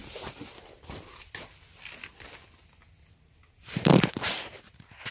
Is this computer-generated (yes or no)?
no